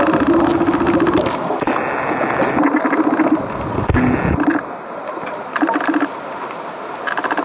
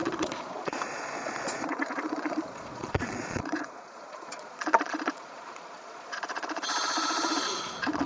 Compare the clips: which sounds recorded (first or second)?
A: first